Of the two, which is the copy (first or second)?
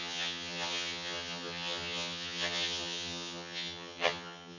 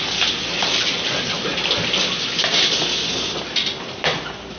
first